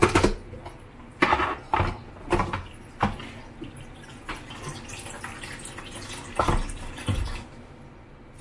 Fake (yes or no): no